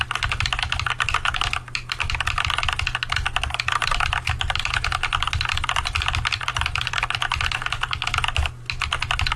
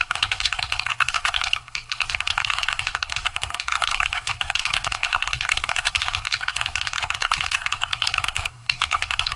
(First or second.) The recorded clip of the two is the first